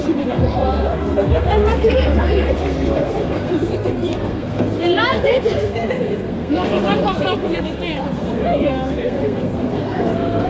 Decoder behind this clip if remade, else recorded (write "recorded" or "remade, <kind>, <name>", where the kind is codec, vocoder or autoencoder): remade, codec, SNAC